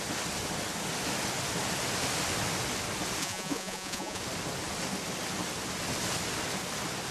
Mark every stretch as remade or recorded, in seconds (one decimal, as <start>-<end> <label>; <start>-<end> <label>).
0.0-3.2 recorded; 3.2-4.2 remade; 4.2-7.1 recorded